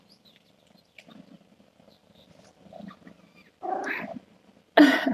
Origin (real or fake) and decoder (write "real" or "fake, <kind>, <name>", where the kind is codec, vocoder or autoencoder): real